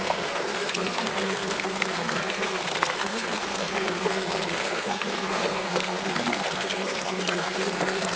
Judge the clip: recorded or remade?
remade